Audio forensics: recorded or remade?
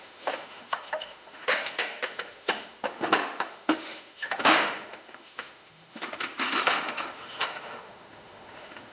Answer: remade